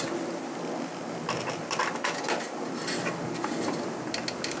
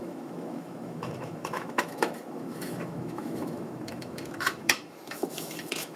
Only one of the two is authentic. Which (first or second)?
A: first